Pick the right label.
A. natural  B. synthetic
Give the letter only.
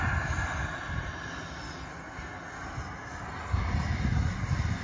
A